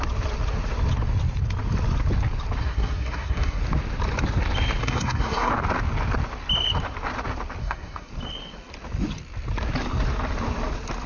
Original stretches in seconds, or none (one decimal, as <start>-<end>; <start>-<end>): 0.0-2.6; 3.6-4.8; 5.5-7.6; 8.1-11.1